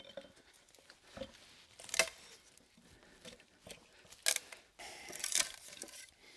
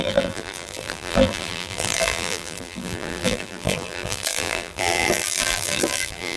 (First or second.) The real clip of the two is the first